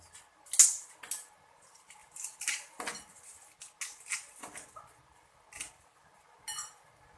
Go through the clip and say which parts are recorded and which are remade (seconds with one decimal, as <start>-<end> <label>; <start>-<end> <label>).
0.0-7.2 recorded